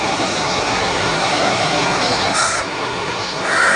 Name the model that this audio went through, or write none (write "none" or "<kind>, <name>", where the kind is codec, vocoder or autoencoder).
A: codec, SNAC